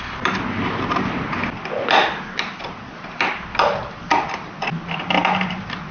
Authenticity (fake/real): real